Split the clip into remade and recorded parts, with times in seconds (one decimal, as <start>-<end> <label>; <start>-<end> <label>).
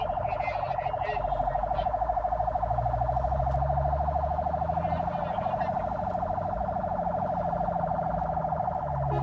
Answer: 0.0-1.6 recorded; 1.6-3.4 remade; 3.4-9.2 recorded